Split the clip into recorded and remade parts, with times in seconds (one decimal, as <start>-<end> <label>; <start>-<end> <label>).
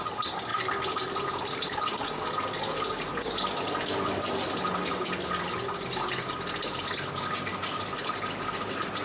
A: 0.0-9.0 recorded